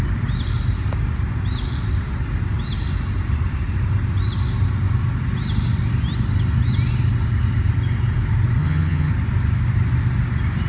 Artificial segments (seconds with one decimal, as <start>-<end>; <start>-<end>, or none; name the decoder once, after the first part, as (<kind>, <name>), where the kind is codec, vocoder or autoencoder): 8.6-9.1 (vocoder, HiFi-GAN)